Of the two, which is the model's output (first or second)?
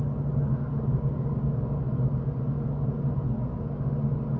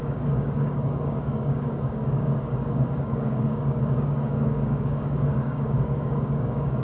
second